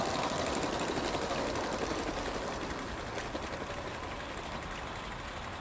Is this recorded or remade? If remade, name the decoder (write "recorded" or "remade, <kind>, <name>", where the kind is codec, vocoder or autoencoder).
recorded